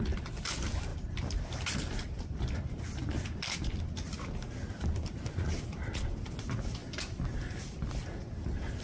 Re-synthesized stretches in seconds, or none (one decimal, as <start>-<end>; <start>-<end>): none